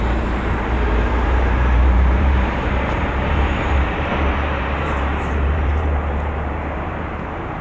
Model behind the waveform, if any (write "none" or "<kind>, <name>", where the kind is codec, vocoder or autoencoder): vocoder, BigVGAN v2